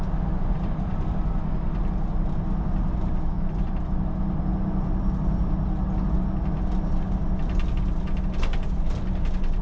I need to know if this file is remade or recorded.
recorded